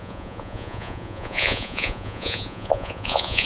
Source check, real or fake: fake